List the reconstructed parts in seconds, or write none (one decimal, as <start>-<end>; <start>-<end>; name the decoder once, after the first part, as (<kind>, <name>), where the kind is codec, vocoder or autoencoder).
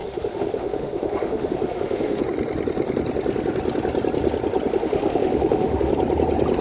0.0-2.2 (autoencoder, DAC-VAE); 4.7-5.9